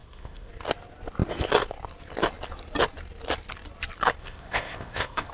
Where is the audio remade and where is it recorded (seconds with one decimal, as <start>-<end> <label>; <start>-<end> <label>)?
0.0-0.5 remade; 0.5-4.2 recorded; 4.2-5.3 remade